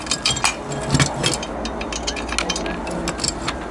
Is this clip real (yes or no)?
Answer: yes